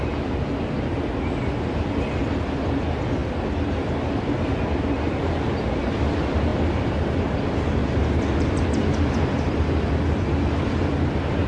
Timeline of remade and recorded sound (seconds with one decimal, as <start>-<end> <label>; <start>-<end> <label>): 0.0-7.8 recorded; 7.8-8.6 remade; 8.6-11.5 recorded